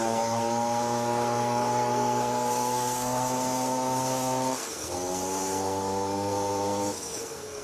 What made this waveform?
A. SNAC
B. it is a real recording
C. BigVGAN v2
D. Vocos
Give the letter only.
A